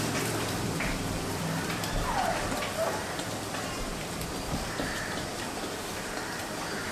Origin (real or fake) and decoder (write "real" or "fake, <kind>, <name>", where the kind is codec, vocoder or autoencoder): fake, vocoder, BigVGAN v2